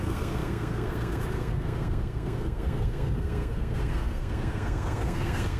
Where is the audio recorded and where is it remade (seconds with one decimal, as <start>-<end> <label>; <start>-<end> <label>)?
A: 0.0-5.6 remade